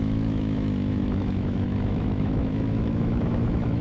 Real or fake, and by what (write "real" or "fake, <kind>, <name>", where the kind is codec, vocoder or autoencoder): fake, autoencoder, DAC-VAE